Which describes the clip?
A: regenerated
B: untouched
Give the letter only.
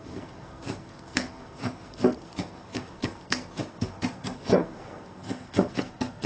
A